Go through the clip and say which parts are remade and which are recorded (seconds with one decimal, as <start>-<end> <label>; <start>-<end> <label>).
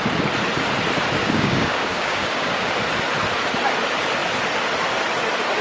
0.0-1.2 recorded; 1.2-2.7 remade; 2.7-5.6 recorded